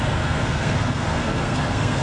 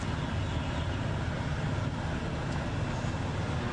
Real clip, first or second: second